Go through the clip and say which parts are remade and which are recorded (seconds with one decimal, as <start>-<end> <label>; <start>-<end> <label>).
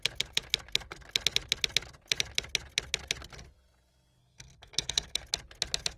0.0-4.2 recorded; 4.2-5.2 remade; 5.2-6.0 recorded